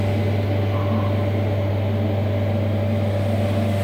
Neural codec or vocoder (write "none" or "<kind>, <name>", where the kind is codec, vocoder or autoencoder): none